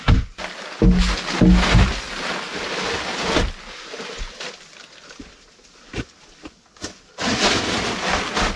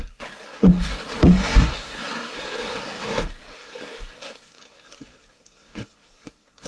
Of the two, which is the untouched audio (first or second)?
first